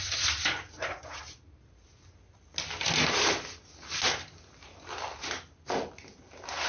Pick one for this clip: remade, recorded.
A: recorded